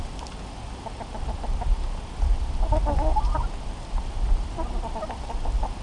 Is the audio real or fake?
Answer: real